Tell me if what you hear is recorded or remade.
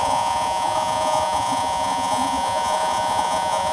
remade